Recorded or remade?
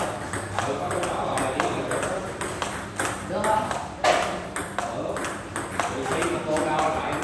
recorded